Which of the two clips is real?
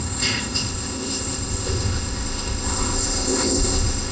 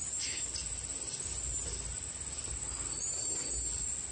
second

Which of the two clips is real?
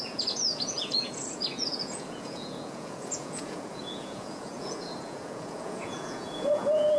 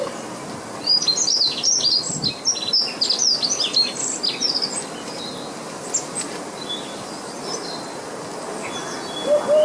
second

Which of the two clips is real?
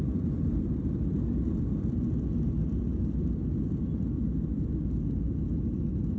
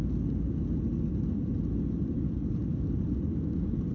second